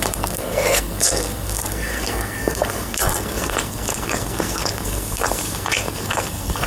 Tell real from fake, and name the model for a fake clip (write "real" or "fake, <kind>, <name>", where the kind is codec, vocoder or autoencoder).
fake, codec, SNAC